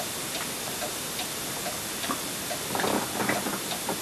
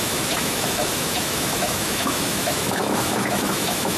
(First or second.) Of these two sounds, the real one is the first